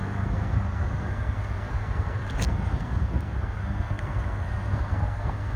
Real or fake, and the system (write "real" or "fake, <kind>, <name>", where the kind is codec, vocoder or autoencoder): fake, codec, SNAC